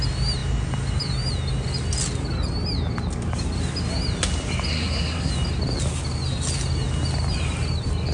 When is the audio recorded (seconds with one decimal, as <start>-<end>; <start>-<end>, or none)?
0.0-4.7; 5.3-8.1